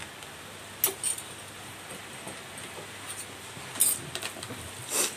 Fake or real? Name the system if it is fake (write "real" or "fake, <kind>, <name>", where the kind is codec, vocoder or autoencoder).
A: real